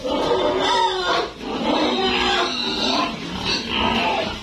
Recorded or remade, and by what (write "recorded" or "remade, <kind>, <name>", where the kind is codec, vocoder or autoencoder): recorded